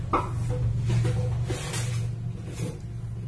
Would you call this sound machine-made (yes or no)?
no